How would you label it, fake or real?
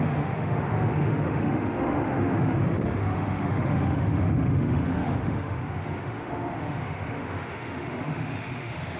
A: fake